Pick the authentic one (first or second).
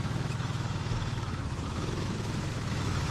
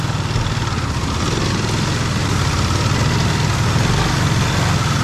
second